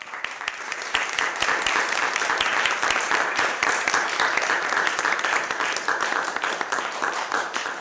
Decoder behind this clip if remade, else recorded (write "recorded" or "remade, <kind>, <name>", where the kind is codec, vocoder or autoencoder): remade, vocoder, BigVGAN v2